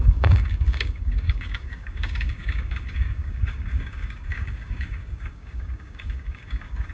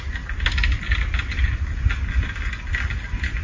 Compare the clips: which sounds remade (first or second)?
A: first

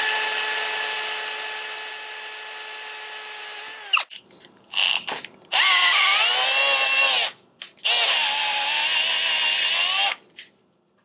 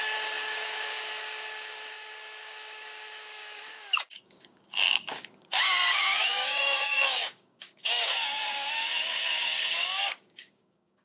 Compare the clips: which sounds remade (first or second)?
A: second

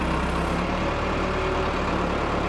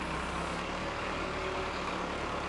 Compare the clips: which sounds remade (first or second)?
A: second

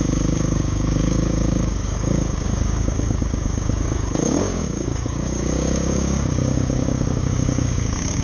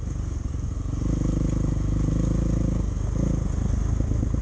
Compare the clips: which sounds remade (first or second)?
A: first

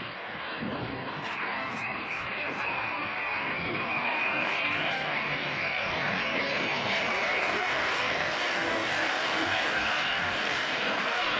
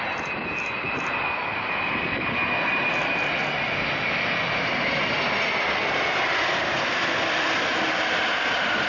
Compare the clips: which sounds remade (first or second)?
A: first